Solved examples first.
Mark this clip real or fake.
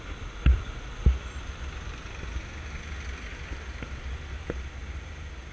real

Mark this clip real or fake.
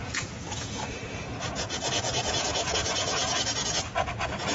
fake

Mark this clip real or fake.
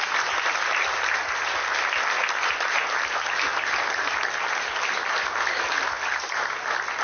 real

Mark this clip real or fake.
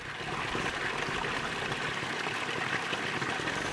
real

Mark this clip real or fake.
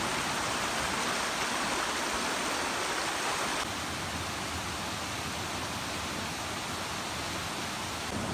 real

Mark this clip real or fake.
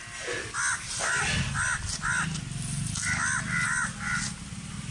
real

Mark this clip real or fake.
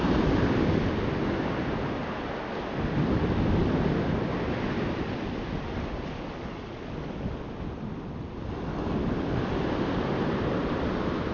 real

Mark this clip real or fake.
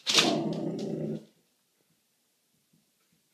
real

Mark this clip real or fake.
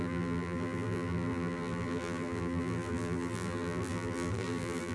fake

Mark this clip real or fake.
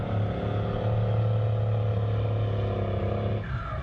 real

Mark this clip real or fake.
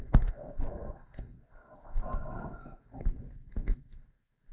fake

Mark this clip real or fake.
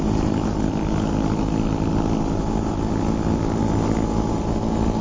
real